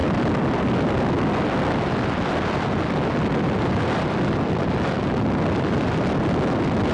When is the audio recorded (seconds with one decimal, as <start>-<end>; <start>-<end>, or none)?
0.0-6.9